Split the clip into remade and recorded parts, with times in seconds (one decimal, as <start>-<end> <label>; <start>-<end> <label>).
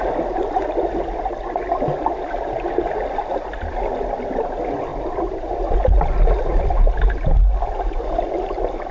0.0-8.9 recorded